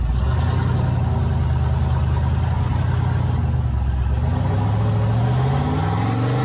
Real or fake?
real